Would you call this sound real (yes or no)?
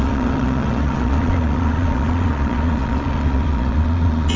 no